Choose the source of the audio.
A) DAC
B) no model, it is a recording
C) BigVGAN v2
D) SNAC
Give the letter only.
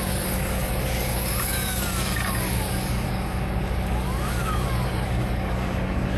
A